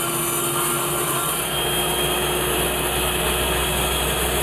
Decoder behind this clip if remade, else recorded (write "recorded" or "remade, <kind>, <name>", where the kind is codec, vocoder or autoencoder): recorded